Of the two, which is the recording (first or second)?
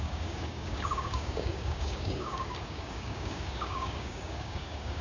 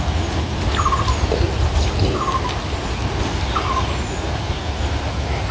second